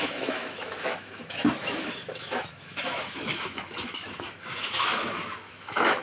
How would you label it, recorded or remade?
remade